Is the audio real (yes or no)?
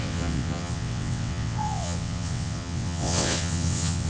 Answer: no